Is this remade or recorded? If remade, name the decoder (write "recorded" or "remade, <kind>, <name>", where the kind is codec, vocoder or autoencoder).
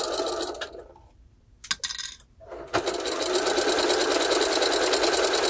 recorded